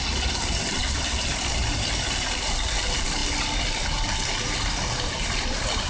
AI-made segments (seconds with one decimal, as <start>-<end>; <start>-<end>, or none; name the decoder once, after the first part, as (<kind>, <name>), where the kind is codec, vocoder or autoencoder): none